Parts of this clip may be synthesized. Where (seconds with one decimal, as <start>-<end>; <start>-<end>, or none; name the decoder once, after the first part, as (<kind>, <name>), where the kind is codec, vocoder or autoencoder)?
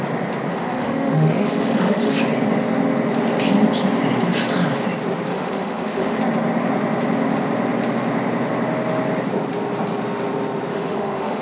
0.5-2.2 (autoencoder, DAC-VAE); 5.3-6.2; 10.7-11.4